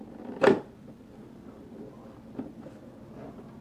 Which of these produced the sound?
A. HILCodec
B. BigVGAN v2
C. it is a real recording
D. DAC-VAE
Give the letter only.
C